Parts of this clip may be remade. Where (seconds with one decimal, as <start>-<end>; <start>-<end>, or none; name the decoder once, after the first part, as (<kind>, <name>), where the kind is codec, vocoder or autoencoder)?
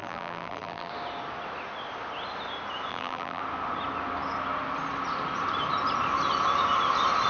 0.0-0.9 (vocoder, BigVGAN v2); 2.9-3.4